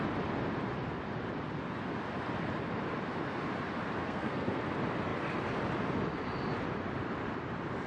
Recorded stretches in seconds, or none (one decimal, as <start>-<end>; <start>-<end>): 0.0-4.0; 4.6-7.9